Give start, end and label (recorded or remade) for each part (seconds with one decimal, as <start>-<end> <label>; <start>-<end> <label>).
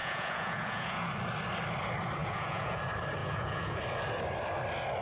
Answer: 0.0-1.1 remade; 1.1-2.2 recorded; 2.2-2.8 remade; 2.8-3.2 recorded; 3.2-3.8 remade; 3.8-5.0 recorded